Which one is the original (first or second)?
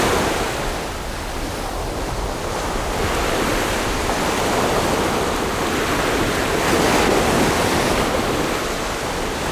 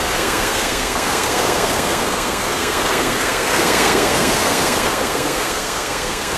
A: first